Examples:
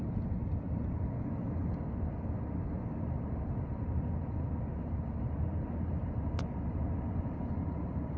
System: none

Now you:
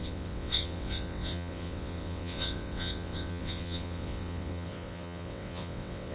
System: vocoder, WaveNeXt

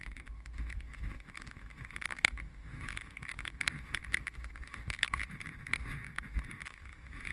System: autoencoder, DAC-VAE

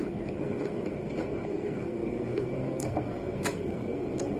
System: codec, SNAC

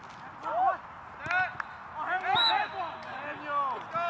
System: none